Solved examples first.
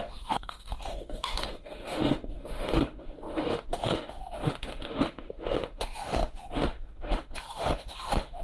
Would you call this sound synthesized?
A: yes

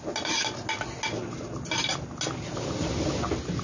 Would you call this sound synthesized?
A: no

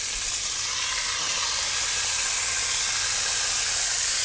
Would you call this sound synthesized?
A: no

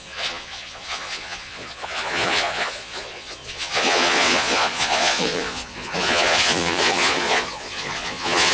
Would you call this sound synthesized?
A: yes